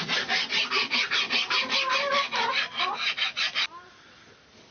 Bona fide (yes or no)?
yes